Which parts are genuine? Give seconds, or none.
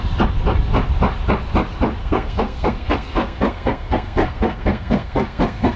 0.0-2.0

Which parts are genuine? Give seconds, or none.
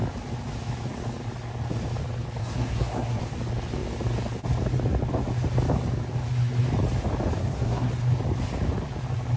0.0-2.4; 3.2-7.4; 7.9-9.4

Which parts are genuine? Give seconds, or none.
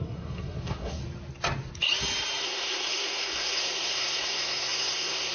1.0-2.4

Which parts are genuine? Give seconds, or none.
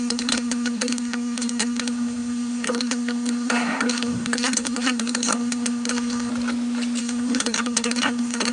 6.3-7.0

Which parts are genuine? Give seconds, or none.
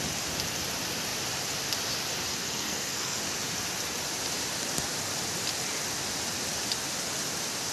0.0-2.3; 3.2-7.7